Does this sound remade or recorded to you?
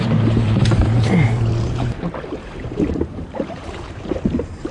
remade